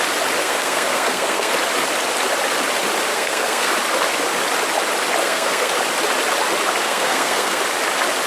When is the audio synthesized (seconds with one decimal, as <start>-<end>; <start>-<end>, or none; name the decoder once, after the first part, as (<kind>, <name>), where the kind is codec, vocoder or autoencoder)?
0.4-1.5 (codec, SNAC); 3.1-3.7; 5.2-5.7; 6.8-7.6